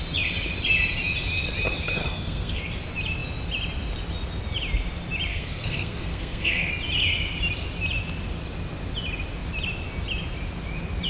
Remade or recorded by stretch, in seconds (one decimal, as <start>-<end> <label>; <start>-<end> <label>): 0.0-2.0 recorded; 2.0-2.6 remade; 2.6-5.3 recorded; 5.3-6.7 remade; 6.7-11.1 recorded